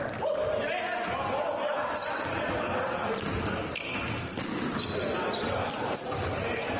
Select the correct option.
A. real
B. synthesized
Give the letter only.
A